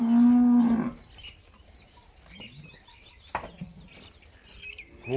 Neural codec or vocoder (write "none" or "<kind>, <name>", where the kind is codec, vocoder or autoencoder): none